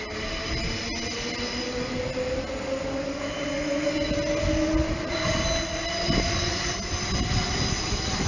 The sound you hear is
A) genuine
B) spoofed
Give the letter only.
A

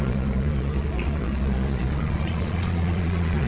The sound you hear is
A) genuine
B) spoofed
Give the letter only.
B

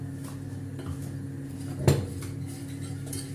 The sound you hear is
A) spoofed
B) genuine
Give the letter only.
B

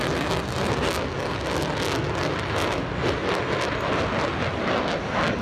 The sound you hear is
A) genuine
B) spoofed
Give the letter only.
A